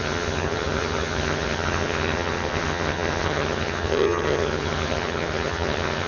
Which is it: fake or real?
fake